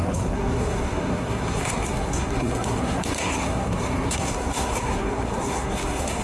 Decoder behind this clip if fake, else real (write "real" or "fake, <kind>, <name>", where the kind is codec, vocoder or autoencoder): fake, codec, SNAC